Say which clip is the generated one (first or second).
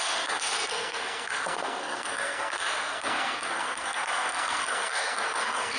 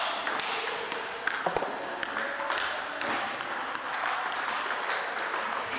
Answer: first